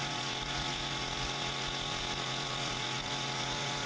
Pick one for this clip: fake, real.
fake